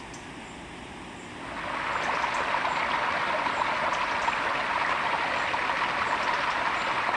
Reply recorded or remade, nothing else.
recorded